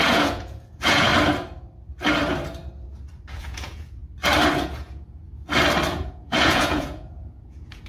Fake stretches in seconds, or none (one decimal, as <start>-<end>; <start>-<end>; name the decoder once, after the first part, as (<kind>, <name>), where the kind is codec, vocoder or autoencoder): 0.0-1.1 (vocoder, Vocos); 3.3-4.0; 4.6-5.2; 5.9-7.9